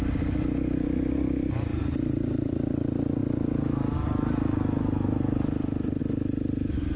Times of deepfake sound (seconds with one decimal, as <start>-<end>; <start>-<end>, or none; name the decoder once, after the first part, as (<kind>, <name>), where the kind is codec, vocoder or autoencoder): 1.7-2.5 (vocoder, BigVGAN v2)